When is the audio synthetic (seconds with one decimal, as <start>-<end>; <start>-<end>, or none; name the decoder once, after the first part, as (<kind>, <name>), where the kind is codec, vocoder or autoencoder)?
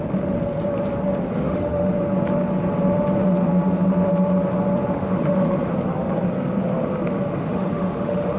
1.3-1.9 (autoencoder, DAC-VAE); 4.9-5.7; 7.3-8.4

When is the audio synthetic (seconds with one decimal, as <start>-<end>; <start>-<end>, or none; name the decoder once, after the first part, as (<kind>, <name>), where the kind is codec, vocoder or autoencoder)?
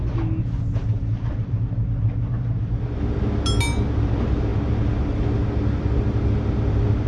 none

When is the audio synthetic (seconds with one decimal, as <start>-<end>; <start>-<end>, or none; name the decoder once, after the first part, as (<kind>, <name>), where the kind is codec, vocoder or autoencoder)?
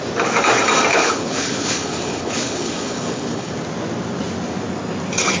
0.9-3.5 (codec, HILCodec)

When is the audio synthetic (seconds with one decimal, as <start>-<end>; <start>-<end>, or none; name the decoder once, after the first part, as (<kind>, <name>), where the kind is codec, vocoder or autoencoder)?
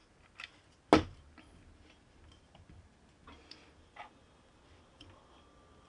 none